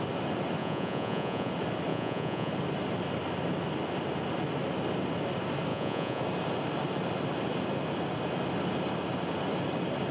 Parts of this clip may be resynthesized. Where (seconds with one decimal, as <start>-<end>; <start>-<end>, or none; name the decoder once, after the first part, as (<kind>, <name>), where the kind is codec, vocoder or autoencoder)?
0.6-1.5 (vocoder, Vocos); 1.9-2.5; 5.7-6.2